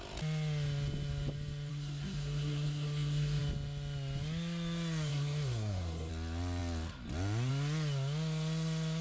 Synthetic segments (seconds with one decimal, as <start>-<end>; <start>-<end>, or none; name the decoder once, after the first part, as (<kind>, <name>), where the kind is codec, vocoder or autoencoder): 1.7-3.4 (codec, SNAC); 5.1-6.1